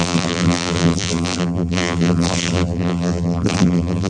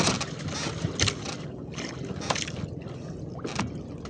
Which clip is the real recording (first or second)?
second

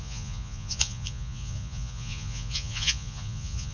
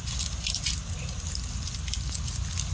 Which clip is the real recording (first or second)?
second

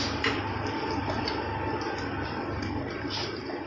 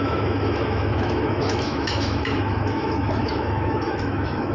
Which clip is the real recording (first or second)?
first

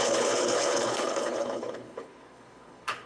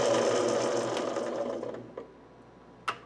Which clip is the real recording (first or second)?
second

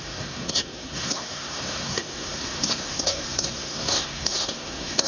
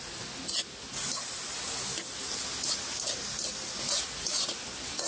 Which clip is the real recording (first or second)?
second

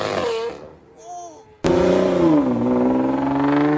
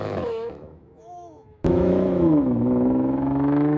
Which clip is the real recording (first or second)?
first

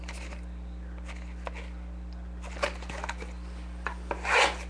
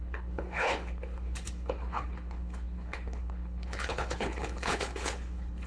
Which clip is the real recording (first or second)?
first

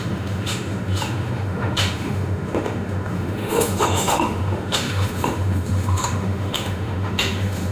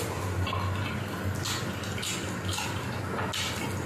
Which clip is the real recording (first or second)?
second